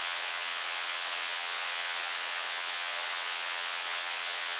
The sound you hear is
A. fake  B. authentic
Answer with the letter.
A